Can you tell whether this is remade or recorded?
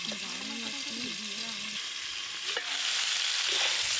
recorded